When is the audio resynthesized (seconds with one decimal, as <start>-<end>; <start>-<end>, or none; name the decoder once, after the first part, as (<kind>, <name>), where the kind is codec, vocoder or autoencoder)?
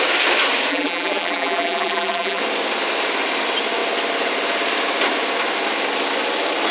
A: 0.7-2.4 (vocoder, BigVGAN v2)